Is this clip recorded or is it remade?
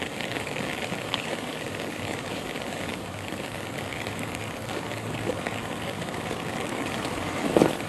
remade